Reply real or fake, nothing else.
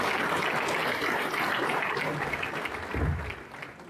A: real